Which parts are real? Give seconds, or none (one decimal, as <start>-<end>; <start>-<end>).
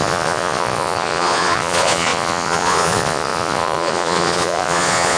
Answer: none